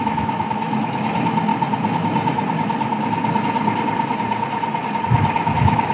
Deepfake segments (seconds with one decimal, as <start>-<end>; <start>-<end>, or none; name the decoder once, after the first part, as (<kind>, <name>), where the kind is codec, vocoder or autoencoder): 0.0-1.5 (autoencoder, DAC-VAE); 5.0-5.9